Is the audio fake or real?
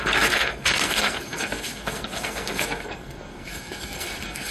fake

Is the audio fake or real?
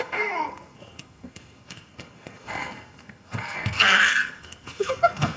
fake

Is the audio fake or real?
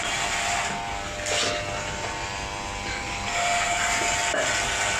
real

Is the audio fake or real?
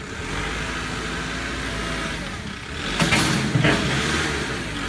real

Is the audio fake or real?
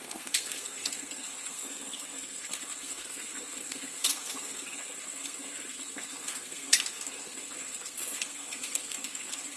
fake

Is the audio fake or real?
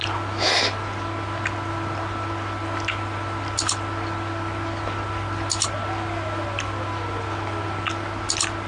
real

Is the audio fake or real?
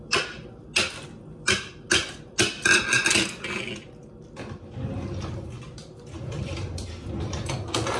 real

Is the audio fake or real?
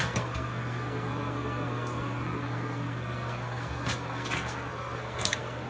fake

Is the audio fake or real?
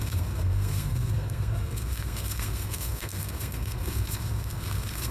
fake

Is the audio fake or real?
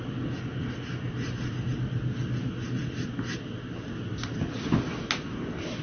real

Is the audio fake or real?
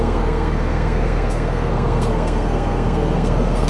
fake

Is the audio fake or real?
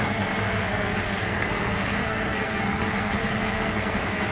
fake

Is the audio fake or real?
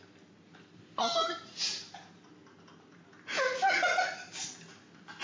real